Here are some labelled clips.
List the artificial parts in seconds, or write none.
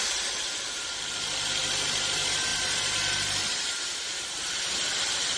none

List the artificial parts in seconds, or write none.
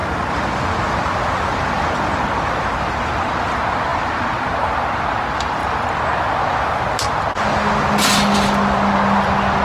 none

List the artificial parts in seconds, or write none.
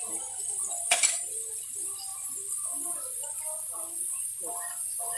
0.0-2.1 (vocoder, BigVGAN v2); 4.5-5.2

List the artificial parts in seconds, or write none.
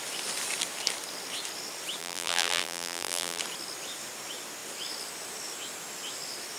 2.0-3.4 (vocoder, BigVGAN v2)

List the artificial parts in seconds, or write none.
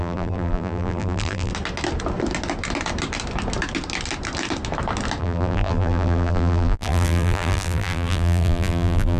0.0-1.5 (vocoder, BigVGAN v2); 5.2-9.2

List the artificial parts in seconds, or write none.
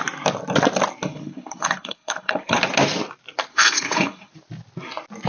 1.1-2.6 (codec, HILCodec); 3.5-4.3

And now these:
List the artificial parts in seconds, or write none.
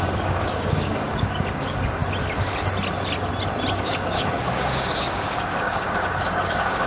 0.0-2.0 (codec, DAC); 3.7-6.9